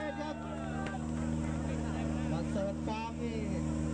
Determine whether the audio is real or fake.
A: real